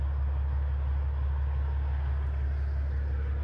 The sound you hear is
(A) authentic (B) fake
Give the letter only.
A